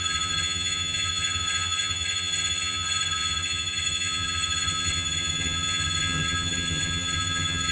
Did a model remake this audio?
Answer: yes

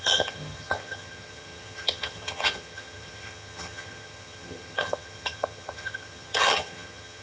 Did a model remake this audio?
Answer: yes